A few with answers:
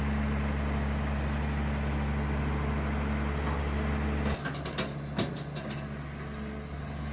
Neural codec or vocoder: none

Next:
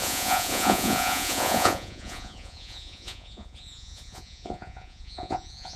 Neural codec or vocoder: vocoder, Vocos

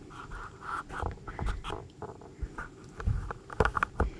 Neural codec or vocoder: none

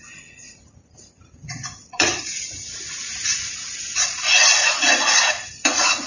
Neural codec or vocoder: vocoder, Vocos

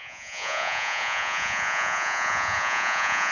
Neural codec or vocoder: vocoder, Vocos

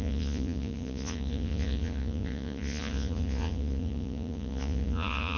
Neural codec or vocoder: vocoder, Vocos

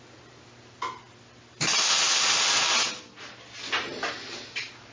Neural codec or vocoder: none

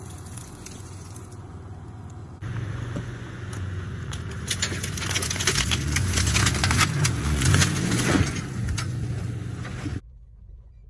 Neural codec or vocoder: vocoder, Vocos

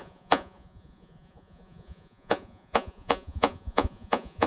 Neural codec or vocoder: vocoder, Vocos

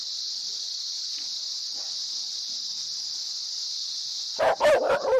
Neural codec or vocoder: none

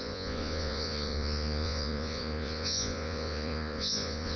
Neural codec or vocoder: vocoder, Vocos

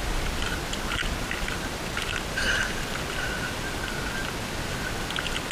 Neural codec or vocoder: none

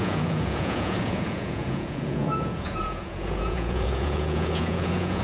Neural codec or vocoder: vocoder, Vocos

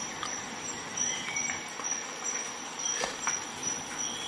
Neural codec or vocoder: none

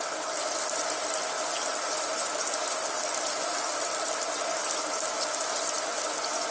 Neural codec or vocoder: none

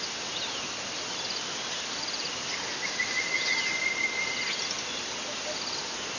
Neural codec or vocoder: none